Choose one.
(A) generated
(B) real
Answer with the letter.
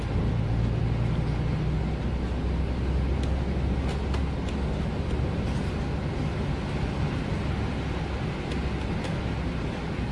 B